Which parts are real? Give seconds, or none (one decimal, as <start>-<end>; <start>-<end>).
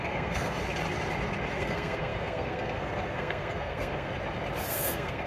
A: 0.6-1.5; 4.1-4.7